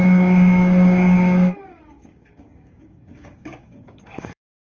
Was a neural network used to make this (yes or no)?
yes